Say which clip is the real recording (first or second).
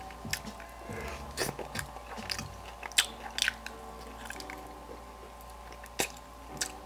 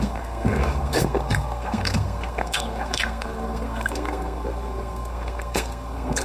first